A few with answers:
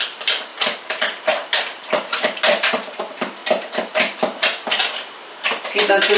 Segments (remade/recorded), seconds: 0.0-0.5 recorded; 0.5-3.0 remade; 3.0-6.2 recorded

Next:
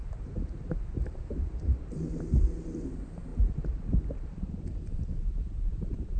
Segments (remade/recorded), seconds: 0.0-1.6 remade; 1.6-3.3 recorded; 3.3-6.2 remade

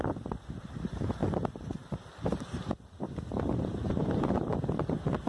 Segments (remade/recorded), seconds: 0.0-1.2 recorded; 1.2-3.0 remade; 3.0-4.0 recorded; 4.0-4.7 remade; 4.7-5.3 recorded

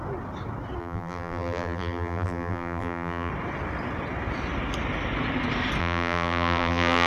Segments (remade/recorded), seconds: 0.0-0.8 recorded; 0.8-3.3 remade; 3.3-5.8 recorded; 5.8-7.1 remade

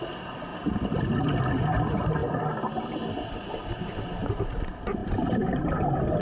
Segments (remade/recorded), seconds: 0.0-0.5 recorded; 0.5-1.5 remade; 1.5-6.2 recorded